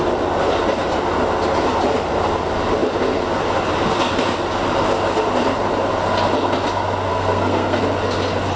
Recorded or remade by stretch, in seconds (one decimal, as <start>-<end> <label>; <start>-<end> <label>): 0.0-7.1 recorded; 7.1-7.8 remade; 7.8-8.6 recorded

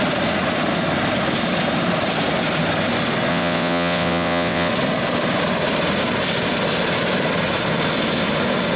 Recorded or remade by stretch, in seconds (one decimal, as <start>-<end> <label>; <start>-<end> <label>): 0.0-3.3 recorded; 3.3-4.7 remade; 4.7-8.8 recorded